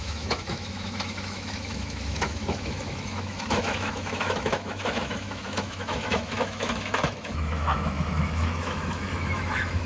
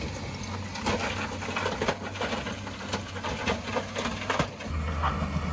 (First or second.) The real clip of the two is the second